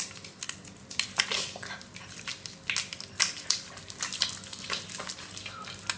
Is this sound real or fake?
real